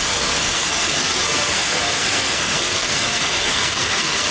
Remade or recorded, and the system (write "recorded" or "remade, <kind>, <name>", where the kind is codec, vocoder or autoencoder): remade, codec, SNAC